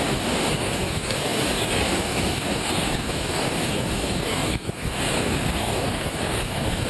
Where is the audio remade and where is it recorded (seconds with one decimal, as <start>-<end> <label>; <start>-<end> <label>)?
0.0-6.9 remade